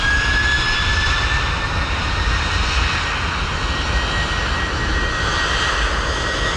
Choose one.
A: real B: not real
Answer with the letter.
A